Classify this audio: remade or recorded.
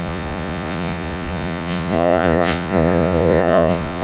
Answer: remade